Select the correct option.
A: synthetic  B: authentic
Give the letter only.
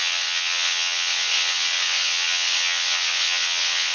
A